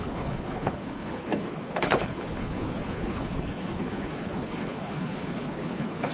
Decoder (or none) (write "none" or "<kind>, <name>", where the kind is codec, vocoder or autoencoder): codec, HILCodec